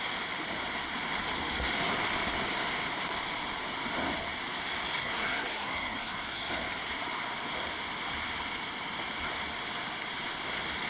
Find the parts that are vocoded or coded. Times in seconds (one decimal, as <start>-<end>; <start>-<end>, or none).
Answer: 5.0-6.5